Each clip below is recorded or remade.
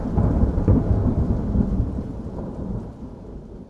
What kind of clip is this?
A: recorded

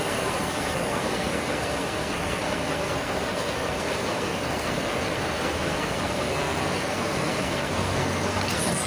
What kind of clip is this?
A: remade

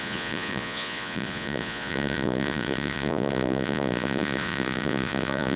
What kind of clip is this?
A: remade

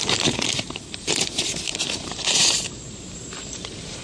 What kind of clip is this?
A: remade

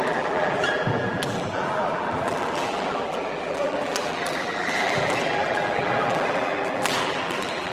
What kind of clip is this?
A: remade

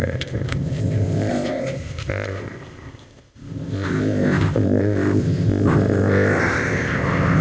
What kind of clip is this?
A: remade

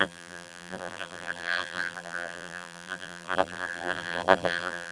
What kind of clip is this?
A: remade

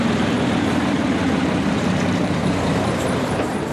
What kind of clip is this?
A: remade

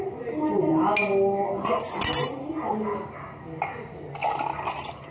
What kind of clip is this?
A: recorded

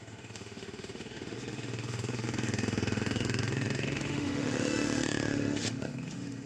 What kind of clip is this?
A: remade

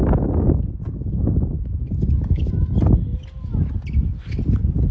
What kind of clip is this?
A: recorded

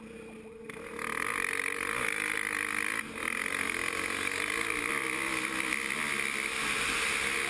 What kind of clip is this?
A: recorded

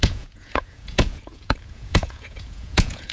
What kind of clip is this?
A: remade